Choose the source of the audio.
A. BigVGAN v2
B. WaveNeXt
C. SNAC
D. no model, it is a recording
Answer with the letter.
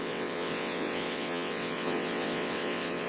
B